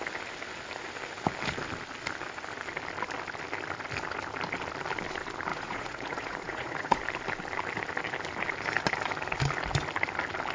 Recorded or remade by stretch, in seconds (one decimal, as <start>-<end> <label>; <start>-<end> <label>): 0.0-5.5 recorded; 5.5-7.0 remade; 7.0-10.5 recorded